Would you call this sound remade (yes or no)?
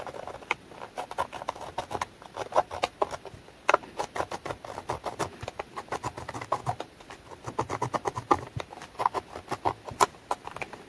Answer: no